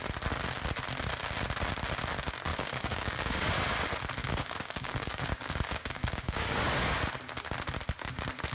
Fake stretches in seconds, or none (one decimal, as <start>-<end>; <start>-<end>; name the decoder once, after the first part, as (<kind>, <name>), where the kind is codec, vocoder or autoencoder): 2.5-3.5 (codec, DAC); 4.2-6.8